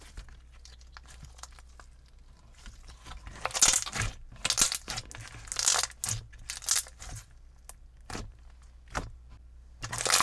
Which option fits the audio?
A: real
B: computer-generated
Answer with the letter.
A